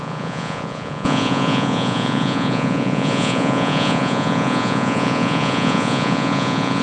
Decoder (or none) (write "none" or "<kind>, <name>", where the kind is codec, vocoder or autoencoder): vocoder, Vocos